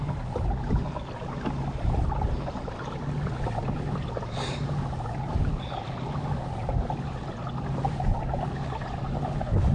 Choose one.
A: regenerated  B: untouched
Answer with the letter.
B